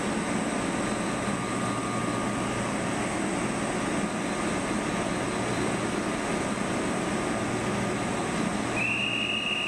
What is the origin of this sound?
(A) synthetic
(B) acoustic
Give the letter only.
B